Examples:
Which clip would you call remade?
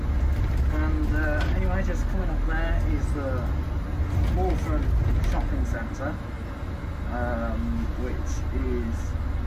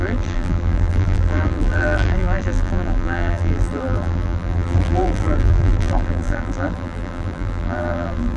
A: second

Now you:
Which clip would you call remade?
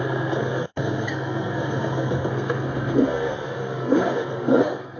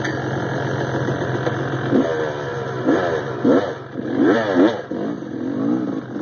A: first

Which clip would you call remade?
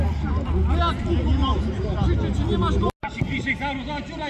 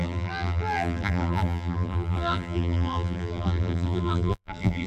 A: second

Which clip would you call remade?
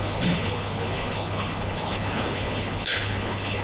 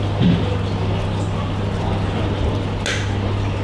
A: first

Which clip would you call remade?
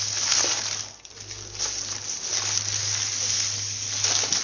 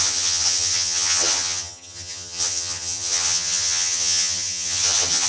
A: second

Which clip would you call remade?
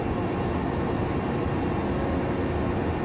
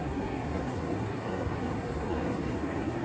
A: second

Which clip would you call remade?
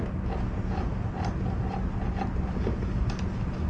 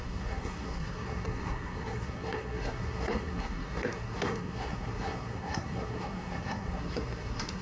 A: second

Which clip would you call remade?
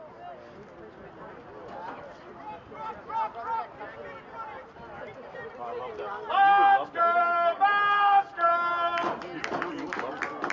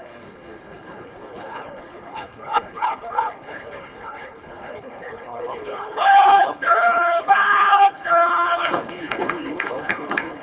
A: second